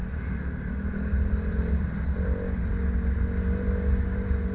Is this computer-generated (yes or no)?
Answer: no